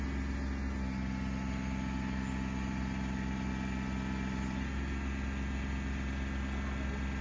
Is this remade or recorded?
recorded